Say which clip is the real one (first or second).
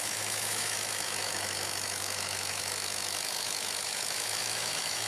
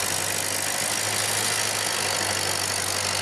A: second